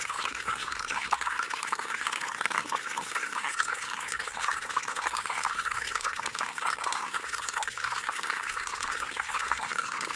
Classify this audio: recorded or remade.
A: remade